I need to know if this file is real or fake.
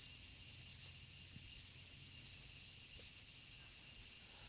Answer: real